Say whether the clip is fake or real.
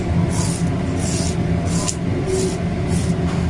real